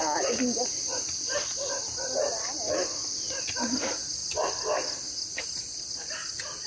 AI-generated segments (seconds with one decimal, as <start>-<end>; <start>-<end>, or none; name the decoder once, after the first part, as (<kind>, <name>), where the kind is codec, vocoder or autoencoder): 0.0-1.2 (vocoder, BigVGAN v2)